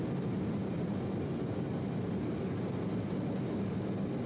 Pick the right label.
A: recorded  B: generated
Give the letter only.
A